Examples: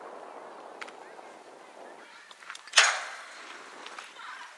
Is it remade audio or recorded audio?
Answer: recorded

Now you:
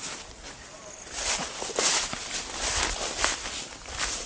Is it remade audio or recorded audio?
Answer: recorded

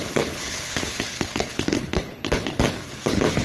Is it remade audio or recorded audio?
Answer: remade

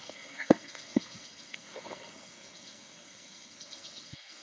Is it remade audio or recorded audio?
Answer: remade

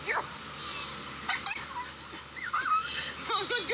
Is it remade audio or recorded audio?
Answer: recorded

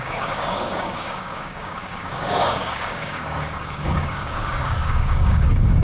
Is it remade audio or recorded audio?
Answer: remade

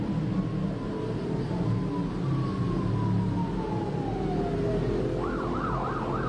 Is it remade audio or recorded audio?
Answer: recorded